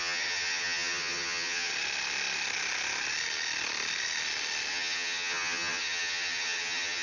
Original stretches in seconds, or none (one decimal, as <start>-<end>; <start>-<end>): 1.7-4.7